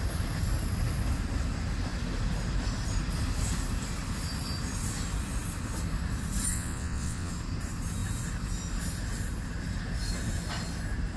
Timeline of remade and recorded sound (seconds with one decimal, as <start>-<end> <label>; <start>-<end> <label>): 0.0-6.5 recorded; 6.5-7.3 remade; 7.3-11.2 recorded